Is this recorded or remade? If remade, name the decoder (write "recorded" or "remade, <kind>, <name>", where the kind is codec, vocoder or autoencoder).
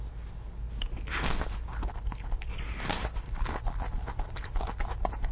recorded